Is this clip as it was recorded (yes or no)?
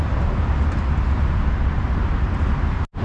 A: yes